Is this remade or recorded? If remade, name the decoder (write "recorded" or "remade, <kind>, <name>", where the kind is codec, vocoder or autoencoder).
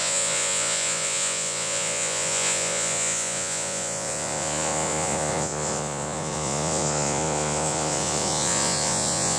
remade, vocoder, Vocos